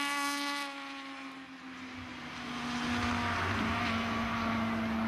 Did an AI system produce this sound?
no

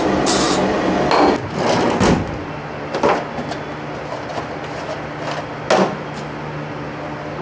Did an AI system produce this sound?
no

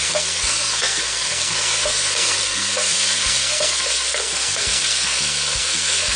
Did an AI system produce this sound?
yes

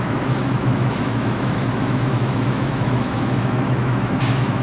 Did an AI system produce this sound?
yes